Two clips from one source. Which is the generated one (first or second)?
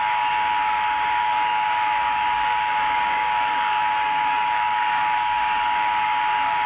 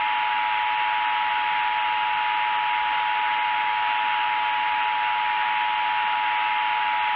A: first